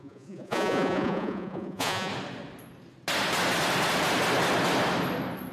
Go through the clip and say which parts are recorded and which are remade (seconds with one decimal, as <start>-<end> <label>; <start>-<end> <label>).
0.0-2.1 remade; 2.1-5.5 recorded